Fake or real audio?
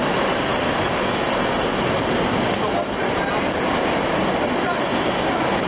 real